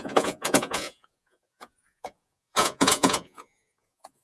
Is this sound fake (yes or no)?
yes